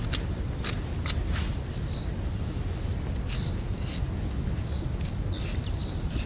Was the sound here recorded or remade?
recorded